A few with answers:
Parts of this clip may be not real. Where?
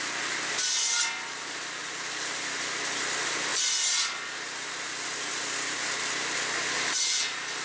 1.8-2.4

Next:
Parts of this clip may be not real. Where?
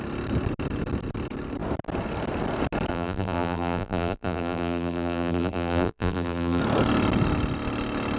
2.9-6.6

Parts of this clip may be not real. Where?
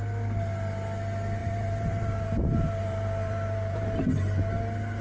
1.4-4.4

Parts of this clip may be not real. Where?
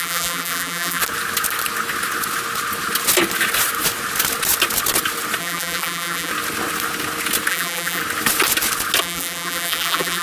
0.0-1.0; 5.4-6.3; 7.5-8.0; 9.0-10.2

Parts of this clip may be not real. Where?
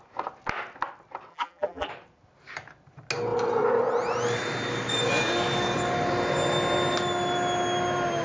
1.3-1.9